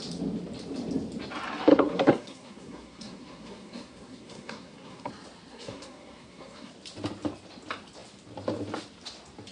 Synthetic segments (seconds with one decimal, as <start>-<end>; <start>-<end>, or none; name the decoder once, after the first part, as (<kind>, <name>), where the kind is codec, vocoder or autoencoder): 1.7-5.1 (codec, SNAC); 5.5-6.7

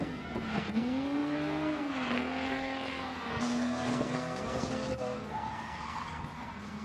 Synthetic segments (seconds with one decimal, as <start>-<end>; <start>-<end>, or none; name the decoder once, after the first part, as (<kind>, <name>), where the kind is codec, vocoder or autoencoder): 0.0-6.8 (codec, SNAC)

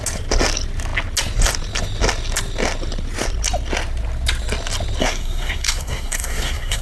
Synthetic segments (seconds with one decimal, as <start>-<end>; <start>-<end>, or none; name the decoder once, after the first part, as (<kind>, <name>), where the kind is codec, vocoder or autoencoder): 5.0-6.8 (codec, SNAC)

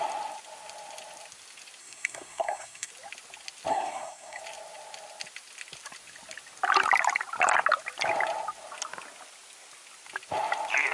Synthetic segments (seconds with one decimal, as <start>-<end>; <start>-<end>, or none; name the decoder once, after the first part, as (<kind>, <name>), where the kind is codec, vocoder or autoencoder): 1.8-2.9 (codec, SNAC); 3.7-4.4

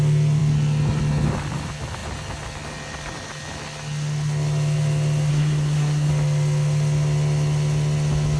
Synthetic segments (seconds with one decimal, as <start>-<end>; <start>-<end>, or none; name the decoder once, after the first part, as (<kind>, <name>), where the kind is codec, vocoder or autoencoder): 5.3-6.1 (codec, SNAC)

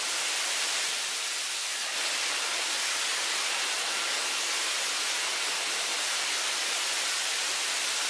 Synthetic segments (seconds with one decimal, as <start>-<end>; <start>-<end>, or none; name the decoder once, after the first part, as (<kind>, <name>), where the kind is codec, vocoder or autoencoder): none

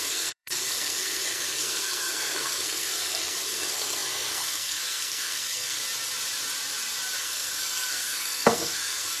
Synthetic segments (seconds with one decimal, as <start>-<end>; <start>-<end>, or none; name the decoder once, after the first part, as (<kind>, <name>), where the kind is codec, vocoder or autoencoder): 0.0-5.8 (codec, SNAC); 7.2-9.2